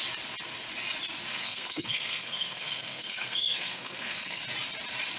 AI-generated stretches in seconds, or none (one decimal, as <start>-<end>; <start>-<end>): 1.3-4.4